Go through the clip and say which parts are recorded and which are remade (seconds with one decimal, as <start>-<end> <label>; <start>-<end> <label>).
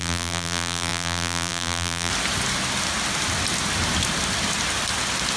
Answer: 0.0-2.1 remade; 2.1-5.4 recorded